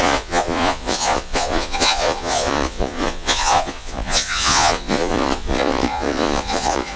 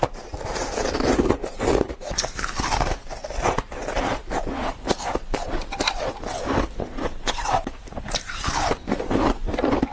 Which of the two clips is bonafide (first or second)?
second